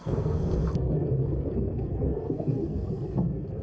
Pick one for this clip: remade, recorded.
remade